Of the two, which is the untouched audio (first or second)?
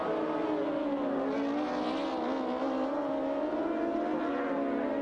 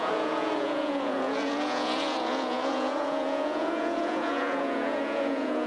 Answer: first